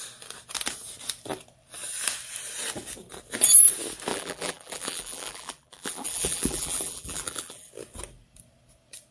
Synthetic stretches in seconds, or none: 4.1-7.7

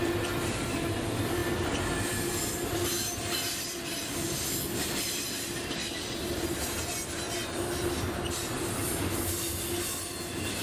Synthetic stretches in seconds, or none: none

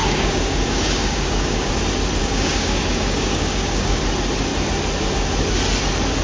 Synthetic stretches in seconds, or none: 0.0-1.7; 2.2-4.0